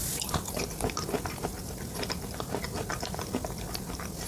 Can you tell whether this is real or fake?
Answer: real